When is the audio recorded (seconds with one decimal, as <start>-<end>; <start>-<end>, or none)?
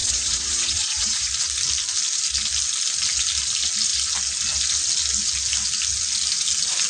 1.3-6.9